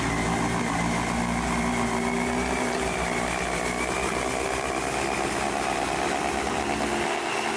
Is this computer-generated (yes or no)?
no